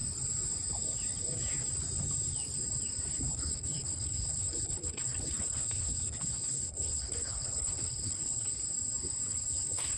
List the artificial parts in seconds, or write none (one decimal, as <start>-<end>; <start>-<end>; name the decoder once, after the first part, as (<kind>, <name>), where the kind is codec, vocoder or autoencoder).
3.3-8.5 (codec, HILCodec); 9.2-10.0